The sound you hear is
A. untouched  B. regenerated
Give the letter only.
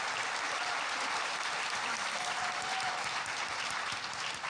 A